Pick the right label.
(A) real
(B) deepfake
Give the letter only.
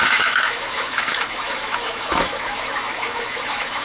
B